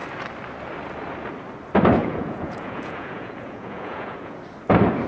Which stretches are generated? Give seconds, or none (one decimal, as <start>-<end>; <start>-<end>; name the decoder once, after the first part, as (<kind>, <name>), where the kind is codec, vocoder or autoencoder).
2.0-4.4 (vocoder, Vocos)